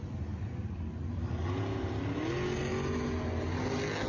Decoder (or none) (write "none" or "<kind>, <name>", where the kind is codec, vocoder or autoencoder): none